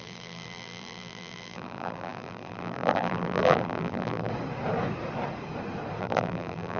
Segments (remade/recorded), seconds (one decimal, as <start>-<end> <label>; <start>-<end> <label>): 0.0-4.3 remade; 4.3-6.0 recorded; 6.0-6.8 remade